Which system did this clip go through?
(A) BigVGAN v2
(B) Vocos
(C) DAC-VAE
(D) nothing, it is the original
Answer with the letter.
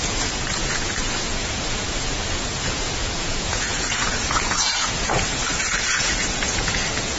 B